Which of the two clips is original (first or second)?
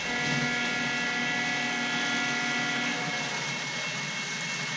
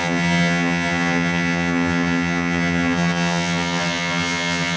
first